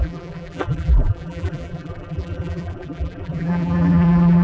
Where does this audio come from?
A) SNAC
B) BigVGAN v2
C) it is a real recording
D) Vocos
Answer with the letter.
B